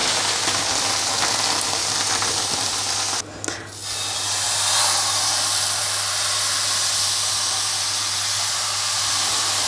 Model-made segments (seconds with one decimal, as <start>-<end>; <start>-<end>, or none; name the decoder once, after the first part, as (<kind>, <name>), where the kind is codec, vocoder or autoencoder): none